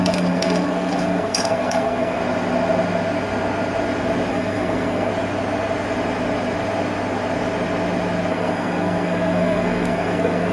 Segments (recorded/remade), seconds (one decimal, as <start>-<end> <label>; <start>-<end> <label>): 0.0-2.2 remade; 2.2-4.3 recorded; 4.3-5.1 remade; 5.1-8.3 recorded; 8.3-10.5 remade